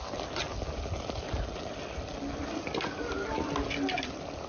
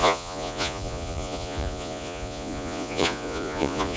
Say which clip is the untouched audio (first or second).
first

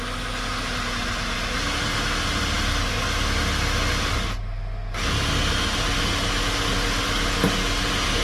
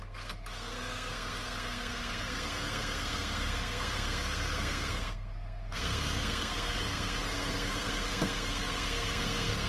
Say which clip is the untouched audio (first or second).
first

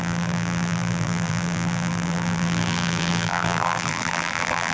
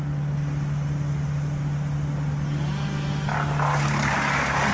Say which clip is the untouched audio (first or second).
second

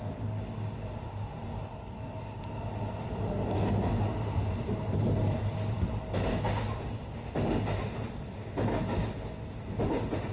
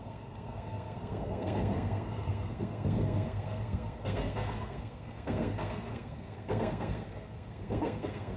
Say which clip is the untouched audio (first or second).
first